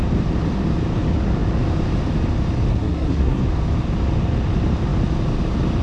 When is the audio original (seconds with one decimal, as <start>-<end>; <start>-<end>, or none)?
0.0-2.7; 3.4-5.8